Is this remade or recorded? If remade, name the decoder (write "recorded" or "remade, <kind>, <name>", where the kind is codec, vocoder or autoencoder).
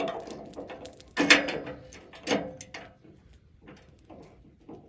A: recorded